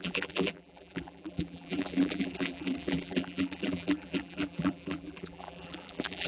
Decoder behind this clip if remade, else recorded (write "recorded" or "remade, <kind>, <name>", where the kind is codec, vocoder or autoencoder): remade, vocoder, BigVGAN v2